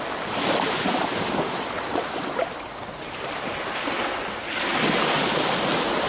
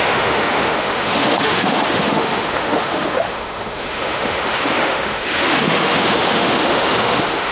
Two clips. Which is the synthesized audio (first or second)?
second